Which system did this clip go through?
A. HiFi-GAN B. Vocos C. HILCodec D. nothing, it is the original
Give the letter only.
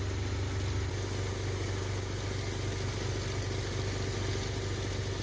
D